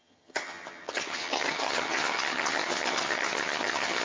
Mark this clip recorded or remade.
remade